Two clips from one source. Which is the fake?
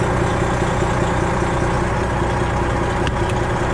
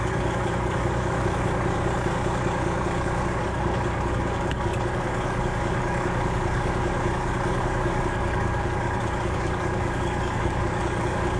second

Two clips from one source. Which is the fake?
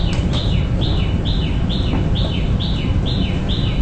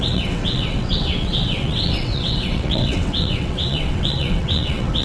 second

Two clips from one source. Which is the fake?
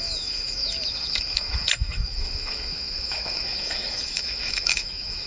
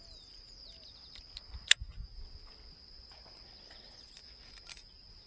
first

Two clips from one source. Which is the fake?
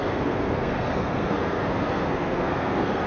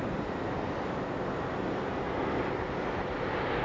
first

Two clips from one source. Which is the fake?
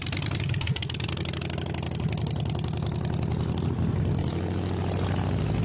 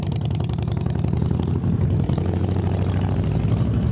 second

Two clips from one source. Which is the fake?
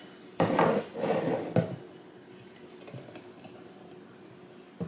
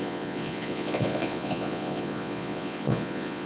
second